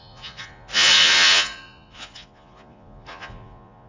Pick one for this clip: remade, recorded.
remade